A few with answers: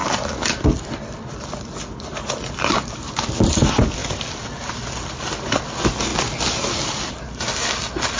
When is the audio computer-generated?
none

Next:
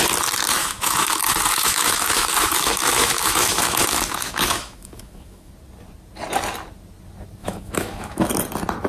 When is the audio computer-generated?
0.6-5.5; 7.4-8.3

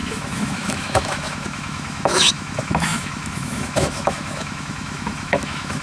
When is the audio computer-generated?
0.0-5.8

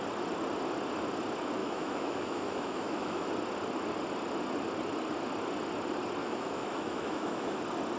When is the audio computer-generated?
1.6-3.3; 6.2-7.6

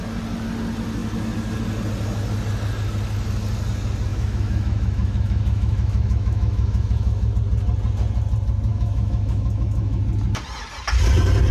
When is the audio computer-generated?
4.1-7.3; 8.7-10.0

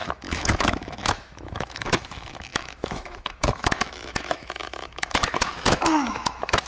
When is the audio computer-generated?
0.0-6.7

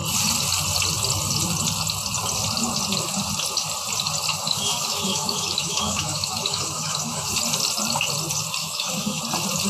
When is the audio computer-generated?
4.3-7.3; 8.6-9.2